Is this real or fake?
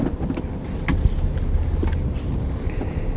real